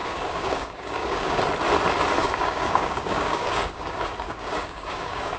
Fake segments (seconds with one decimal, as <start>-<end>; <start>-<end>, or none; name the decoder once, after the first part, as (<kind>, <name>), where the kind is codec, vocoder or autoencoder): 0.0-1.4 (codec, DAC); 2.2-5.4

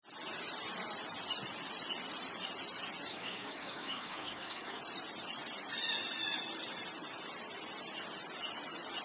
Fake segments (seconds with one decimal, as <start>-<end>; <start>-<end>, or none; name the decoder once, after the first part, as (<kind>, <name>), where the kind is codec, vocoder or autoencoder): 3.1-4.8 (codec, DAC)